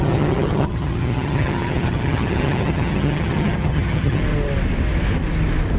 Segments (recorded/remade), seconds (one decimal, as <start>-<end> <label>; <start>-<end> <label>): 0.0-4.2 remade; 4.2-5.8 recorded